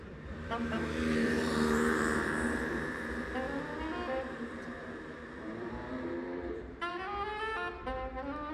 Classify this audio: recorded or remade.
remade